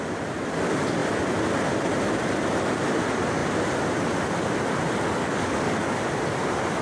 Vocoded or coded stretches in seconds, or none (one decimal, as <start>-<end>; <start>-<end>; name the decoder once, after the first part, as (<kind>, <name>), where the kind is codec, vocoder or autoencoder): 5.2-6.0 (codec, DAC)

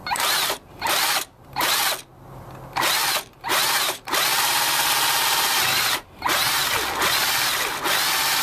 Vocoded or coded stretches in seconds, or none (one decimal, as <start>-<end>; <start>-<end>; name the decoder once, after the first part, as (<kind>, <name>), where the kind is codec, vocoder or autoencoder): 0.0-1.9 (vocoder, BigVGAN v2); 3.0-6.6

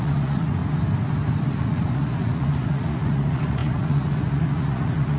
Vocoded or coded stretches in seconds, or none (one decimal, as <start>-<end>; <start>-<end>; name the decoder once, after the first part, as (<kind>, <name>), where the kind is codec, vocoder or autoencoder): 0.0-0.6 (vocoder, Vocos); 1.4-5.2

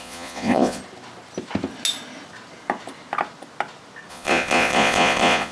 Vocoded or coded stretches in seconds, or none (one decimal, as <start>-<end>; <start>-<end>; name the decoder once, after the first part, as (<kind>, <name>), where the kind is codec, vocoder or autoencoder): 0.0-0.8 (vocoder, Vocos); 4.1-5.5

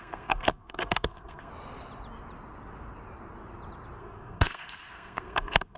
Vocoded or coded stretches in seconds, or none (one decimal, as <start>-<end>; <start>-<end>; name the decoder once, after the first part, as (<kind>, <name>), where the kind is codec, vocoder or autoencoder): 0.0-1.5 (codec, SNAC); 4.0-5.8

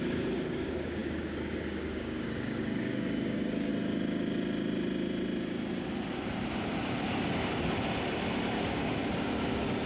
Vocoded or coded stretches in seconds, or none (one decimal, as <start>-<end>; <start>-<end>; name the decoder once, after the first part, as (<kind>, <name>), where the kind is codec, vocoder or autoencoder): 0.0-3.7 (codec, DAC); 8.6-9.0